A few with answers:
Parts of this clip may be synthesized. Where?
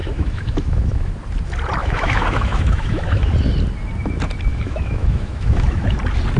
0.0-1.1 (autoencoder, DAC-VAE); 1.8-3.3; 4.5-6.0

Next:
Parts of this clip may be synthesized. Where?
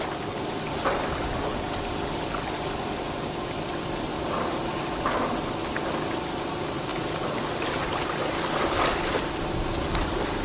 6.9-8.0 (vocoder, BigVGAN v2)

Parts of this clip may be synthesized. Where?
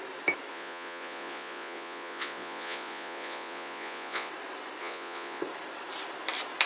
0.5-4.3 (vocoder, Vocos); 4.8-5.4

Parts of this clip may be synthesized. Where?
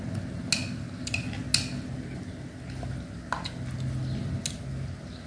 none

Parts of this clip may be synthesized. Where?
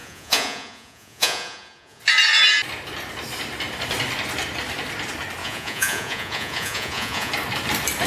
0.0-2.0 (vocoder, Vocos); 5.4-7.3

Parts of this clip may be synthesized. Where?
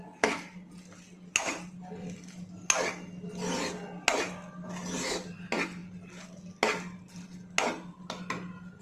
none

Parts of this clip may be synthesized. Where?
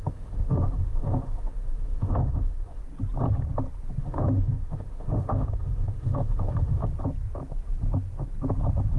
0.0-2.8 (autoencoder, DAC-VAE); 4.0-6.8